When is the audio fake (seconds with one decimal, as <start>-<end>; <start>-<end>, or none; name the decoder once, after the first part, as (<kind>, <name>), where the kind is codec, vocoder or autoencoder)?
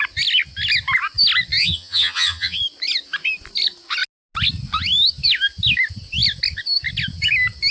1.6-2.6 (vocoder, HiFi-GAN)